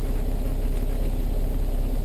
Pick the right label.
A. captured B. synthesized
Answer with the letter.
A